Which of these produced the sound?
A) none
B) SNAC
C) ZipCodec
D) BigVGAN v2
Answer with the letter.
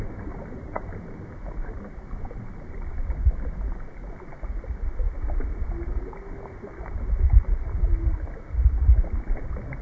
A